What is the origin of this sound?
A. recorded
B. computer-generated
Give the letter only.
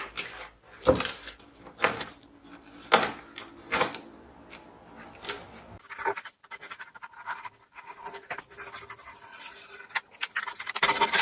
A